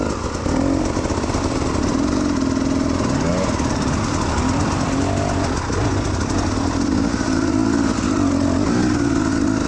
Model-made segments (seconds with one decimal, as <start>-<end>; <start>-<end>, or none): none